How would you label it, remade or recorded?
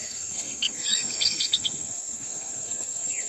remade